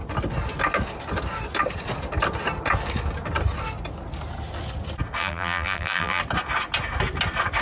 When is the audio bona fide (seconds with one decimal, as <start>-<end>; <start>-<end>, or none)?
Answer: 0.0-5.2; 6.2-7.6